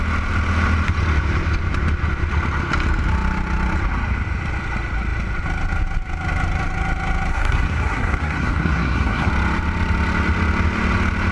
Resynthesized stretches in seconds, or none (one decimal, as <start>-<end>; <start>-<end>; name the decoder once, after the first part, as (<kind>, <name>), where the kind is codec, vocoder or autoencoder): 7.3-9.3 (codec, SNAC)